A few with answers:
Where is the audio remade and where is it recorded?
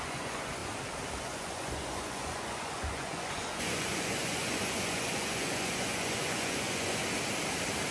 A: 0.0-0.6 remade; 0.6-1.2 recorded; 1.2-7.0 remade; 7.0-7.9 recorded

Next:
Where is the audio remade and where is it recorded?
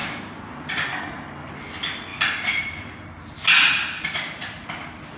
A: 0.0-0.9 recorded; 0.9-1.5 remade; 1.5-5.2 recorded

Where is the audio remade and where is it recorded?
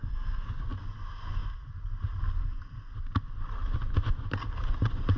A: 0.0-0.6 remade; 0.6-5.2 recorded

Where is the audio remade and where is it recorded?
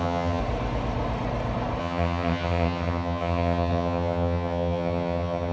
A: 0.0-0.4 remade; 0.4-1.8 recorded; 1.8-5.5 remade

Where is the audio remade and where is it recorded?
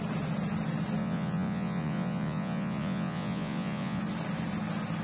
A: 0.0-1.0 recorded; 1.0-4.0 remade; 4.0-5.0 recorded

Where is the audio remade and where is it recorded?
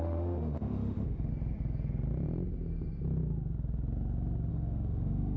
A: 0.0-1.3 remade; 1.3-4.5 recorded; 4.5-5.4 remade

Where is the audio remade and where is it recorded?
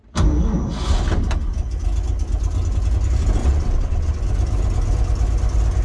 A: 0.0-3.4 recorded; 3.4-4.2 remade; 4.2-5.8 recorded